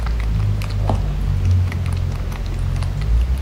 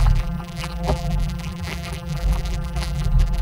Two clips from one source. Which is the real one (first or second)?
first